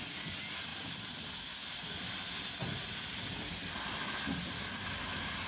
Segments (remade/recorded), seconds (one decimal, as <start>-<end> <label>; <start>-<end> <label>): 0.0-5.5 recorded